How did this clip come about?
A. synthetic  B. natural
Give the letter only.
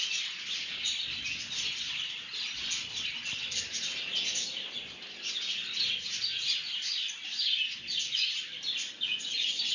B